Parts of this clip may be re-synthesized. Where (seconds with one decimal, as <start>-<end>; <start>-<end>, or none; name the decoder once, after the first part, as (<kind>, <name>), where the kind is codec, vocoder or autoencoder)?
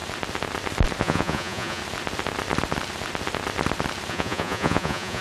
1.0-1.8 (vocoder, Vocos); 4.1-5.2